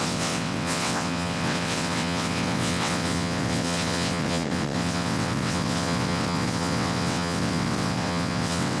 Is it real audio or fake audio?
fake